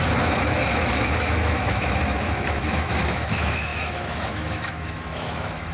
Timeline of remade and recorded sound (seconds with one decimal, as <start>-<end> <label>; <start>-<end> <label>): 0.0-5.7 remade